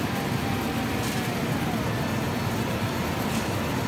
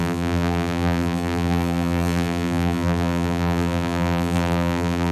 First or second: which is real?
first